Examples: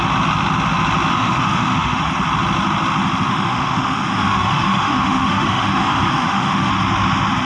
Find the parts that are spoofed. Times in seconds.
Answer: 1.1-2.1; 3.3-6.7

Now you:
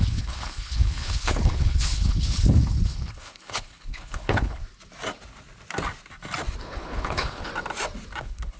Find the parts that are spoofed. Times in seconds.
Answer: 0.0-4.6; 6.6-7.5; 8.2-8.6

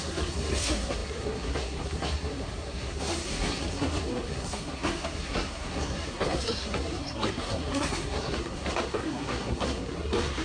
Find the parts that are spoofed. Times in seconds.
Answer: 0.0-10.4

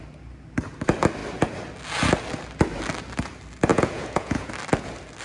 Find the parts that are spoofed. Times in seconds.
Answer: 3.7-4.5

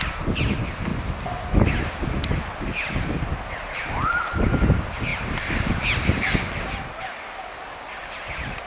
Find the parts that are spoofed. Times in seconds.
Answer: none

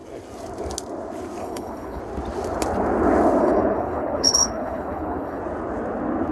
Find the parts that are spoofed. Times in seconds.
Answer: 1.4-2.0; 3.4-5.4

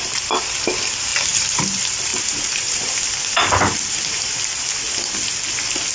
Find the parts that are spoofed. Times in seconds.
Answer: 1.1-1.6; 2.1-4.3